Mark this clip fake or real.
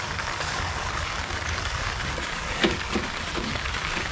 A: fake